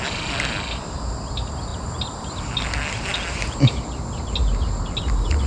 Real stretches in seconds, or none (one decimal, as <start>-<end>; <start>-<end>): 0.0-5.5